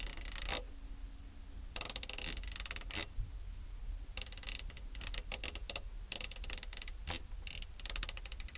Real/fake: real